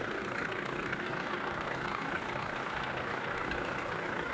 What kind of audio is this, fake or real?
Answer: fake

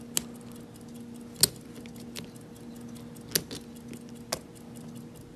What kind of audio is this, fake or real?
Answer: real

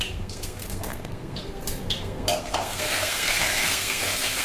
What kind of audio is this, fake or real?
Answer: fake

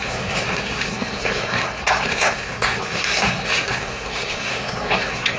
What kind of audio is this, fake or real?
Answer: fake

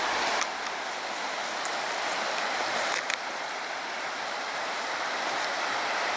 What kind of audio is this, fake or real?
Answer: real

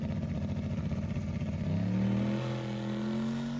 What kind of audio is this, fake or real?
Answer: real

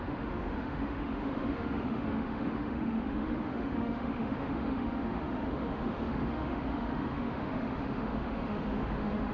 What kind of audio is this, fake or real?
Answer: fake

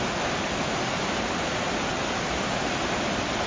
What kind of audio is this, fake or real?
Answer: real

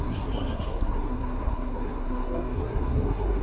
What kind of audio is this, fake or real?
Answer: fake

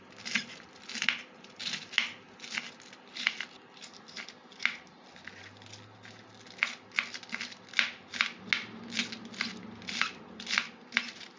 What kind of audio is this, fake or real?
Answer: real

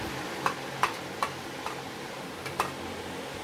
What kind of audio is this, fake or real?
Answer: real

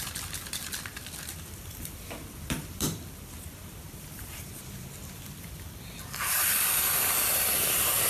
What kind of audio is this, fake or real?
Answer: fake